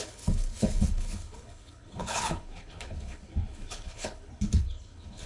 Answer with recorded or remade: remade